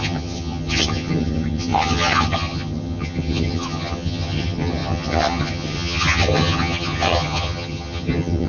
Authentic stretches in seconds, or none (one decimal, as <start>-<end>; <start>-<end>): none